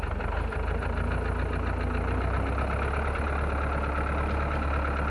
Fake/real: real